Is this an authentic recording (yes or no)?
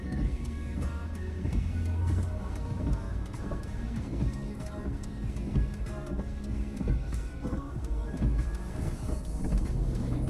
no